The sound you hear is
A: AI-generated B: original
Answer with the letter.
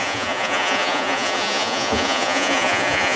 A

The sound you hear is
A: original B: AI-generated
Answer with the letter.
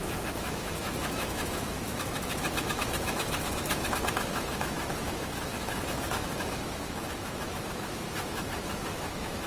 B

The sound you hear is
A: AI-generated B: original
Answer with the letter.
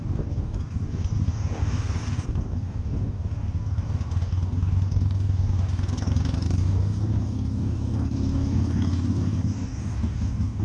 A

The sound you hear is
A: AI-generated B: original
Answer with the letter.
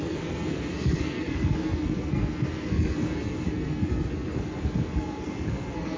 A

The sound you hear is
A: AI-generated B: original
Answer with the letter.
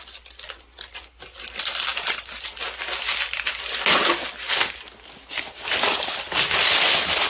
B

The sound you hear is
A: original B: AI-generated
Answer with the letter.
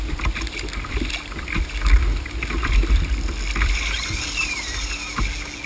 A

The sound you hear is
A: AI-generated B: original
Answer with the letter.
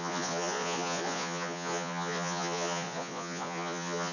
A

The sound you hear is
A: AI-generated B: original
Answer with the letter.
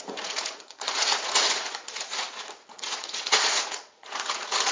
A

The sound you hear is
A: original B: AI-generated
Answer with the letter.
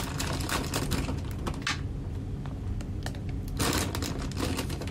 A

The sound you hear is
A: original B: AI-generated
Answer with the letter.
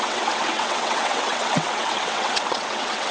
B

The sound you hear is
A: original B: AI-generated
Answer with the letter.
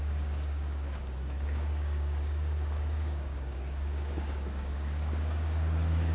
B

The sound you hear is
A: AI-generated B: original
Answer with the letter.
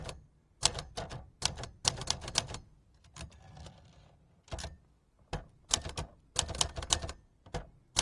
B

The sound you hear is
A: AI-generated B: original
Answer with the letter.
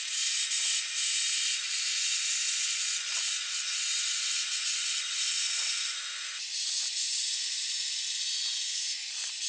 A